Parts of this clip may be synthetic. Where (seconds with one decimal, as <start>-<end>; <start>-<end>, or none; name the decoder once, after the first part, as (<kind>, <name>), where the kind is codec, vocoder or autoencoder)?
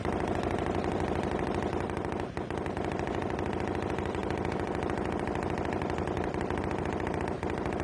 4.2-6.6 (vocoder, BigVGAN v2)